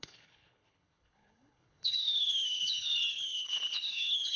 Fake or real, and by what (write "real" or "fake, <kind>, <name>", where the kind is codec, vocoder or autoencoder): fake, codec, HILCodec